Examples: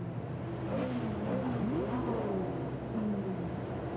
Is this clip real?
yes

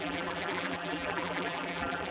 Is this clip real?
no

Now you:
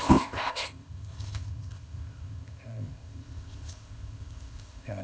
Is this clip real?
no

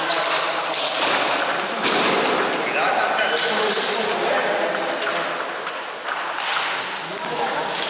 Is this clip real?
yes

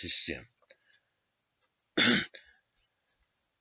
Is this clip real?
yes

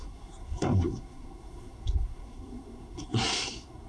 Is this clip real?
no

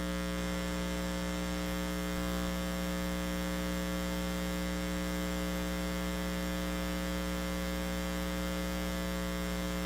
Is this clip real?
yes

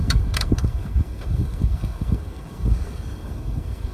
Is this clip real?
no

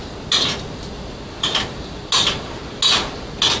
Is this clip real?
yes